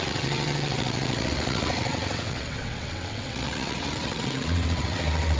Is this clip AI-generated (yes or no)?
yes